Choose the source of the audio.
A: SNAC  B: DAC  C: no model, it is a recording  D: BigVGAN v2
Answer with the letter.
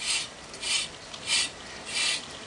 C